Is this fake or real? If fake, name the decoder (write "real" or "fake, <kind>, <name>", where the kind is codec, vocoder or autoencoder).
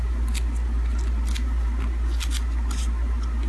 real